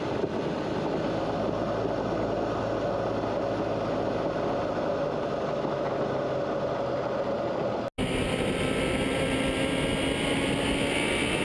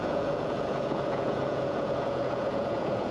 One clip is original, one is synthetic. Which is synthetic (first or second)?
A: second